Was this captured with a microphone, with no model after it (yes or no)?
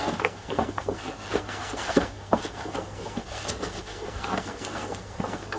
no